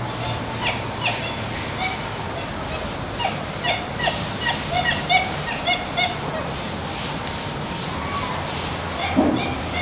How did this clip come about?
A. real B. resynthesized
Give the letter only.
A